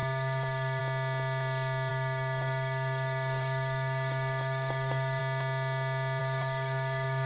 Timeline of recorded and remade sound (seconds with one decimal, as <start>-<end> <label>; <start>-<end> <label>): 0.0-0.8 remade; 0.8-1.9 recorded; 1.9-5.2 remade; 5.2-6.2 recorded; 6.2-7.3 remade